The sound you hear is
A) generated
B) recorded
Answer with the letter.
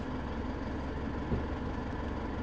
B